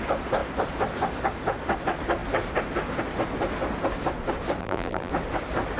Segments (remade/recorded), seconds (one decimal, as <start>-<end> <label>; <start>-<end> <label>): 0.0-4.6 recorded; 4.6-5.1 remade; 5.1-5.8 recorded